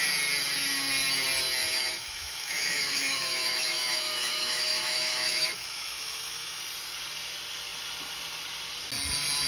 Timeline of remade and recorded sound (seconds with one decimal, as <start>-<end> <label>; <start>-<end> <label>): 0.0-1.6 recorded; 1.6-6.6 remade; 6.6-9.5 recorded